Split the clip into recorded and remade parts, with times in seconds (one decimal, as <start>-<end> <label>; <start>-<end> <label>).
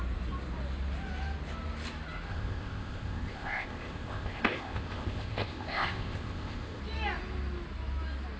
0.0-2.3 recorded; 2.3-6.8 remade; 6.8-8.4 recorded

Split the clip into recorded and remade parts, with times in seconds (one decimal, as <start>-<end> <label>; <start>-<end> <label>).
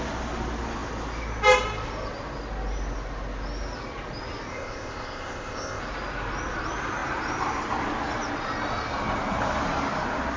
0.0-4.5 recorded; 4.5-5.8 remade; 5.8-10.4 recorded